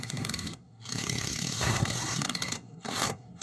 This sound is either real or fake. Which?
fake